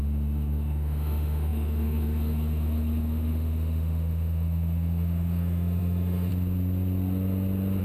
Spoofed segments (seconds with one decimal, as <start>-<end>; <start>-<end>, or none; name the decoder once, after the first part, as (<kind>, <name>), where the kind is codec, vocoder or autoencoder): 0.0-6.3 (autoencoder, DAC-VAE)